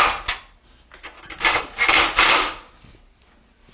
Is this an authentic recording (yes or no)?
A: yes